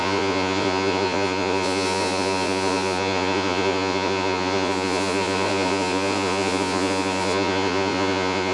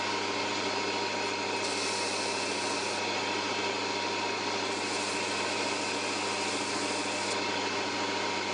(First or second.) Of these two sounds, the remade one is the first